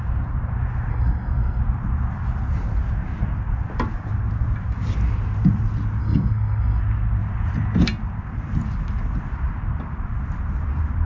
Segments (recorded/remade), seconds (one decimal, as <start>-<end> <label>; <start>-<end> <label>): 0.0-0.9 recorded; 0.9-1.6 remade; 1.6-6.0 recorded; 6.0-6.8 remade; 6.8-11.1 recorded